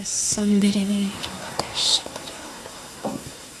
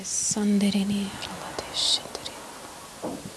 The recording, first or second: second